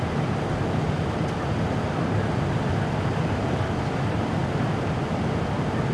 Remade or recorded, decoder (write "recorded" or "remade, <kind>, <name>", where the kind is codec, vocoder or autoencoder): recorded